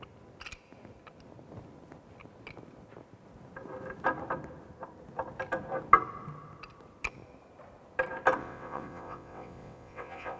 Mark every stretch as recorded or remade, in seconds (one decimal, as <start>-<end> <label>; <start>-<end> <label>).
0.0-8.4 recorded; 8.4-10.4 remade